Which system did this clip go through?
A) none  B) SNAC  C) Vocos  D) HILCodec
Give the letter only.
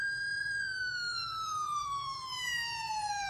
C